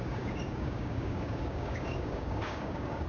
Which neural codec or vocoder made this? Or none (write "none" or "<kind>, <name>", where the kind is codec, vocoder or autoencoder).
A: codec, DAC